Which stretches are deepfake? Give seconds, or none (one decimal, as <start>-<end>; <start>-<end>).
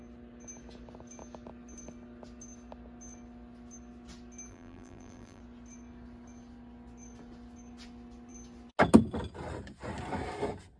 4.5-5.4